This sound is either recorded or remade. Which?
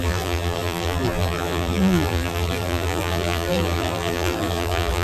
remade